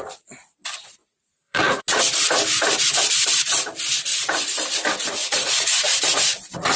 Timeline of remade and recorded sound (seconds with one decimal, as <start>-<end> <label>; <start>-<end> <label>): 0.0-1.0 recorded; 1.0-2.0 remade; 2.0-4.1 recorded; 4.1-4.7 remade; 4.7-5.2 recorded; 5.2-6.8 remade